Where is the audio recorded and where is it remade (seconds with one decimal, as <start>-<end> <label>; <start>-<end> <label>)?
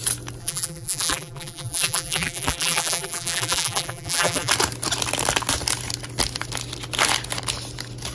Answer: 0.0-0.4 recorded; 0.4-4.5 remade; 4.5-8.1 recorded